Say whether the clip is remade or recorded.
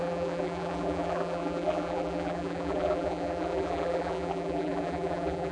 remade